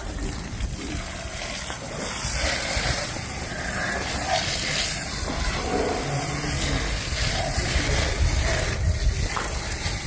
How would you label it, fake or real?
real